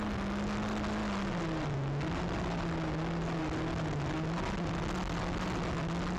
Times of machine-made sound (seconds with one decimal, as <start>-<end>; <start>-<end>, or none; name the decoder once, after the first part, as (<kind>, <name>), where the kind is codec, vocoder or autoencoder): none